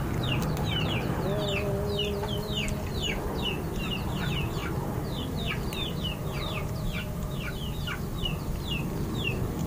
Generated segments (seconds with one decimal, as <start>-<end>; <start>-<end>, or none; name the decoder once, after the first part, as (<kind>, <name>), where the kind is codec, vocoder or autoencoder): 4.6-5.6 (vocoder, BigVGAN v2)